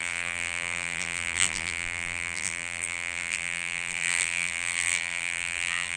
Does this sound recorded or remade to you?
remade